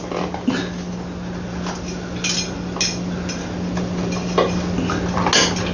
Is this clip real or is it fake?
real